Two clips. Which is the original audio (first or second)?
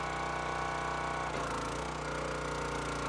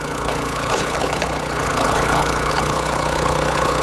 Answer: first